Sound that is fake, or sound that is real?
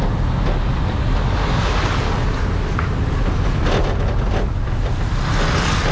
real